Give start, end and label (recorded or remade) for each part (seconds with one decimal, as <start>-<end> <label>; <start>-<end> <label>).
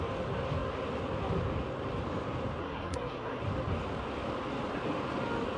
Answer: 0.0-2.6 recorded; 2.6-3.4 remade; 3.4-5.6 recorded